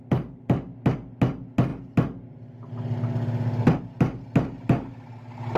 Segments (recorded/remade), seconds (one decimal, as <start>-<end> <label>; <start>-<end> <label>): 0.0-5.6 recorded